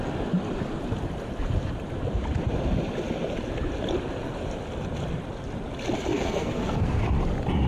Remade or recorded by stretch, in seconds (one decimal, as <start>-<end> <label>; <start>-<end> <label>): 0.0-6.1 recorded; 6.1-7.0 remade; 7.0-7.7 recorded